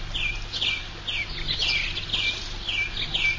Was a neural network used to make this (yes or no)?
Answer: no